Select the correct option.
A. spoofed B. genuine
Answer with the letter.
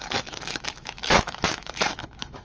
A